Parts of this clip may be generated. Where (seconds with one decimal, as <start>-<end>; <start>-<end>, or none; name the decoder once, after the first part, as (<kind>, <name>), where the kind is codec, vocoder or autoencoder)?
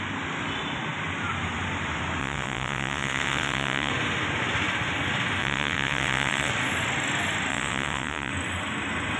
2.2-3.9 (vocoder, WaveNeXt); 5.4-6.5; 7.5-8.3